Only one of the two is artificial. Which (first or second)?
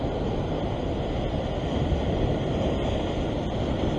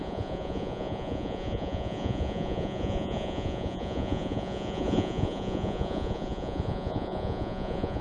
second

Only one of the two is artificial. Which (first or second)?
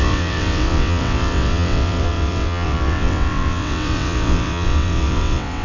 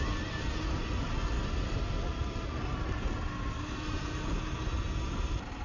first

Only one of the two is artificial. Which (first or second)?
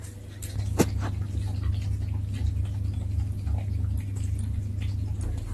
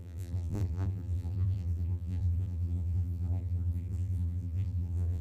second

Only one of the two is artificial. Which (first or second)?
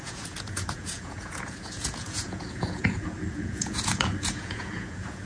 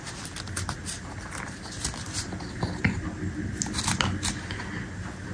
first